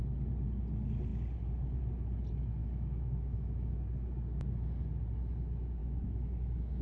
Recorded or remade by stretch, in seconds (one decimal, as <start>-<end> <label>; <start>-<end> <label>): 0.0-2.6 recorded; 2.6-3.7 remade; 3.7-5.8 recorded; 5.8-6.8 remade